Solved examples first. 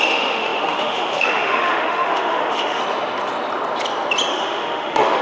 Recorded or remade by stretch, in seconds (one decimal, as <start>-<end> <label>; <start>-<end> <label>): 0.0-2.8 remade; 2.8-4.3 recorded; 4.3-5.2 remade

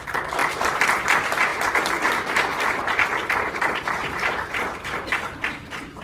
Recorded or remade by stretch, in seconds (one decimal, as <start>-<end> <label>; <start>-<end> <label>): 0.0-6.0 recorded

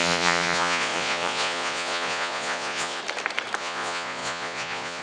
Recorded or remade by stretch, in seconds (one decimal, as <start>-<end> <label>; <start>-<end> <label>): 0.0-3.0 remade; 3.0-3.6 recorded; 3.6-5.0 remade